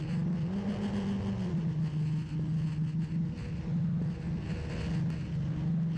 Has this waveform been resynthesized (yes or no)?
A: no